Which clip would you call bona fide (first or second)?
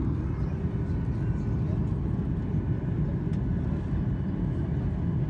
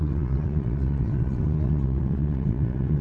first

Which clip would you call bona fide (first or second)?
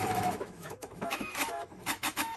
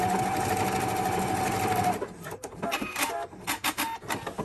second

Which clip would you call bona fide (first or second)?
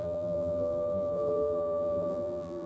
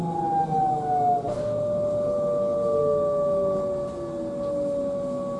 second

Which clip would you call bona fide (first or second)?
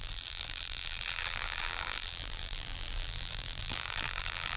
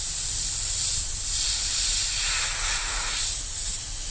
second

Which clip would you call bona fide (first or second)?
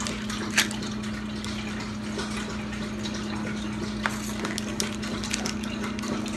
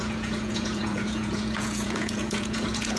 first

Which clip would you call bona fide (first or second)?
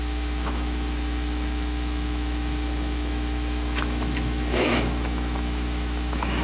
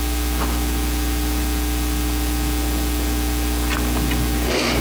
second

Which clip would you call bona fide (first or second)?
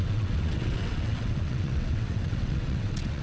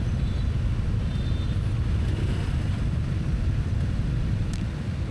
second